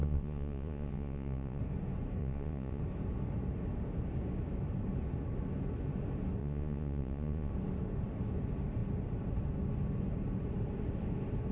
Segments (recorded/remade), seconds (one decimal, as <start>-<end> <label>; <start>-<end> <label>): 0.0-1.6 remade; 1.6-2.2 recorded; 2.2-2.8 remade; 2.8-6.4 recorded; 6.4-7.5 remade; 7.5-11.5 recorded